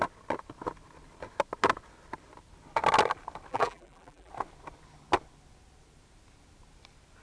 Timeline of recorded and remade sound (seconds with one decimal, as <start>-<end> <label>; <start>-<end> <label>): 0.0-3.5 recorded; 3.5-4.3 remade; 4.3-7.2 recorded